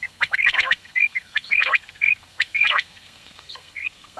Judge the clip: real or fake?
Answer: fake